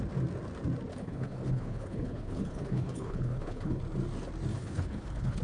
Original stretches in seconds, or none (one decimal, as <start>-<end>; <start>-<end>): 0.0-0.9; 3.8-4.5